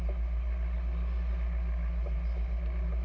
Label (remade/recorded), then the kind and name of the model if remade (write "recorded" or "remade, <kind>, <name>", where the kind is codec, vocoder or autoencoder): recorded